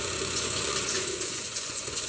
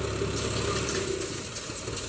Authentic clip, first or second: second